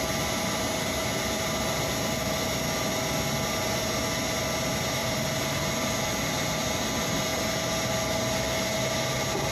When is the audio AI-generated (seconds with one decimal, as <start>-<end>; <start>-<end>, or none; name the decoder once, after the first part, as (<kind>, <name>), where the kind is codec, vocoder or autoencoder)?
5.0-5.6 (vocoder, BigVGAN v2)